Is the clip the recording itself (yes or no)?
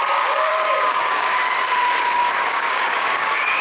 no